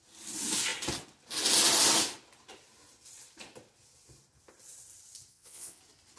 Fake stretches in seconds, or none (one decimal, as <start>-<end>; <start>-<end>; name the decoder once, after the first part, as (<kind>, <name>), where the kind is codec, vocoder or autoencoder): 5.3-5.8 (vocoder, WaveNeXt)